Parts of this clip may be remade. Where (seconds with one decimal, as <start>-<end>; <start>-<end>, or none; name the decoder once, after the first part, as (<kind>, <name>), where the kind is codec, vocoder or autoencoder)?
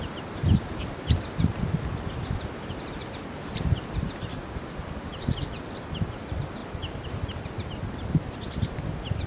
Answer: none